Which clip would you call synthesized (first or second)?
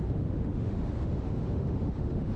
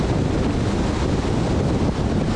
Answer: first